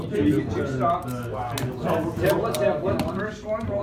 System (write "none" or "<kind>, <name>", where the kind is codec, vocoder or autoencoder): none